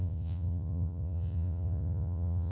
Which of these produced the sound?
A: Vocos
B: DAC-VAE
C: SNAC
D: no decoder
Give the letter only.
A